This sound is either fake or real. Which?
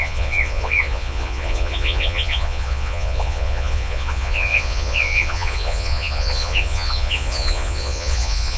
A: fake